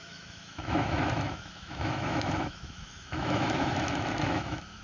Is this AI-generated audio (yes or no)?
yes